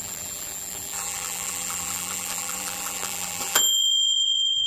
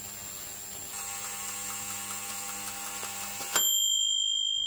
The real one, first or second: second